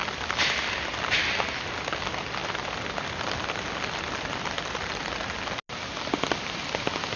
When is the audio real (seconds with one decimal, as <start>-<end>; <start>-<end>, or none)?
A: 0.0-7.2